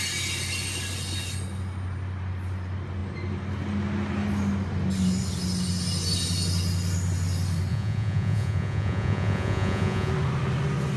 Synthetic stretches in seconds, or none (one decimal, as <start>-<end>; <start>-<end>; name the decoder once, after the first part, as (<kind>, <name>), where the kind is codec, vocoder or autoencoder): 7.7-10.1 (vocoder, Vocos)